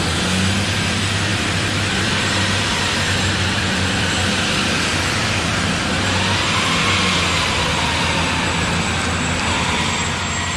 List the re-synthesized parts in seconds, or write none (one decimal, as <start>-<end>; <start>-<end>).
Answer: 1.3-5.8